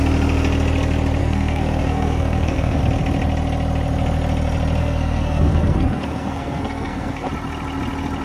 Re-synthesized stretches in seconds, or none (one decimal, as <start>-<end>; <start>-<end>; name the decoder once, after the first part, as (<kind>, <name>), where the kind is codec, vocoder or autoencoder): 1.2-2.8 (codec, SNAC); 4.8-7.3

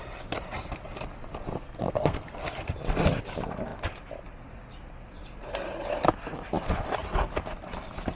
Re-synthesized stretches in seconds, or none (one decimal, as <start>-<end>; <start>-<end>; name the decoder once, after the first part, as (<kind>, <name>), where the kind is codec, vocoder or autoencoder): 1.5-2.3 (codec, SNAC)

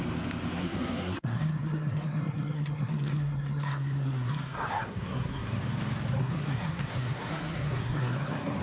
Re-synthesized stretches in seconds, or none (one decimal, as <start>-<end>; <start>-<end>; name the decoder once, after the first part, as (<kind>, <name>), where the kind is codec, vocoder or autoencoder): 0.6-5.6 (codec, SNAC); 6.2-8.6